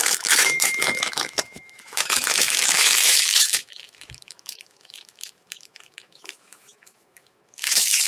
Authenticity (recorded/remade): remade